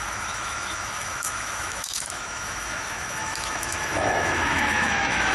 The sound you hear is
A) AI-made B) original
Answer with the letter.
A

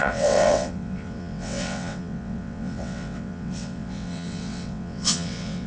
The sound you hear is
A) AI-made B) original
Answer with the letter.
A